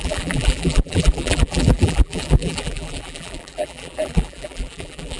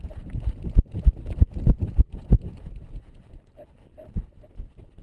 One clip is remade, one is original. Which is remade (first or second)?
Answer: first